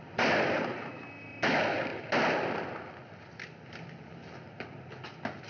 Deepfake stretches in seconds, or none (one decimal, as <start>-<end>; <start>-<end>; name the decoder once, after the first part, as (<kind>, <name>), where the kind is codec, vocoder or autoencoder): none